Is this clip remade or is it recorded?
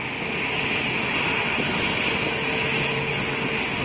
recorded